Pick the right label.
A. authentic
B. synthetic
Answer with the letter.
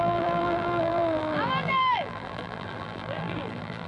B